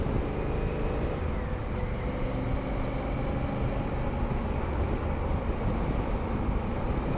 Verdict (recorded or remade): recorded